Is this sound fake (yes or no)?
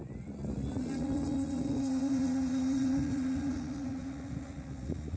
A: yes